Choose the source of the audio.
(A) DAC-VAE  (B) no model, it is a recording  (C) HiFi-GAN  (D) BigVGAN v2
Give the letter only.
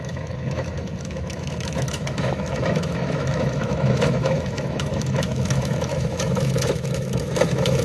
A